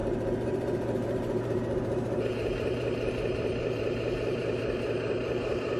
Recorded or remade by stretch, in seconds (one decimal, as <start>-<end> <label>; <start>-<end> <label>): 0.0-4.4 remade; 4.4-5.2 recorded; 5.2-5.8 remade